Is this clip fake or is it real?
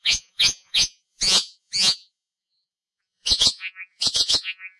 fake